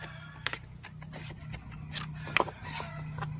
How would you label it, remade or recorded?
recorded